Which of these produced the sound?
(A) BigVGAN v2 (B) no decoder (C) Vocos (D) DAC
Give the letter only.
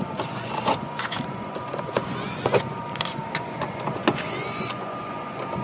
C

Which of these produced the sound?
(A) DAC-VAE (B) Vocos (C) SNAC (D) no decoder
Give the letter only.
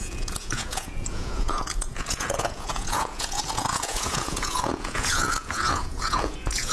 B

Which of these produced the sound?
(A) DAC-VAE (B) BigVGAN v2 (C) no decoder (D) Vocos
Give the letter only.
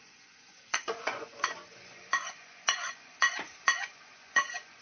D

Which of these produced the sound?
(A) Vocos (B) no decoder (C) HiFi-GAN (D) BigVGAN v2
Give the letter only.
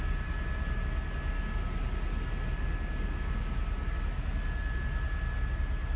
B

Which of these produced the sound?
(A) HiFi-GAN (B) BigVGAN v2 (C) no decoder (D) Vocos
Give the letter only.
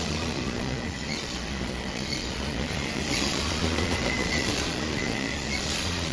D